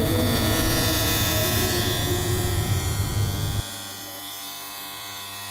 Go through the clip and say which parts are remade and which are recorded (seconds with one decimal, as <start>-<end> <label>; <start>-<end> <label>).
0.0-3.1 remade; 3.1-3.7 recorded; 3.7-5.5 remade